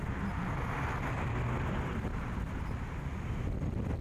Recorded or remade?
recorded